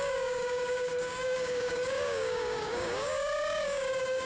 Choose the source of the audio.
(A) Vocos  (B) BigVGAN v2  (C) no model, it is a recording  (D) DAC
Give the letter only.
D